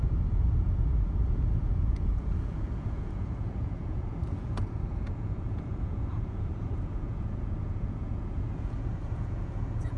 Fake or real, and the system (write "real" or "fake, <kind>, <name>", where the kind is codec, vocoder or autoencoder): fake, vocoder, Vocos